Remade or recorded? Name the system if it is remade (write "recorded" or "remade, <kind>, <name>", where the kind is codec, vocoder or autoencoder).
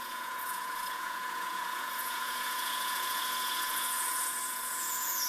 remade, vocoder, Vocos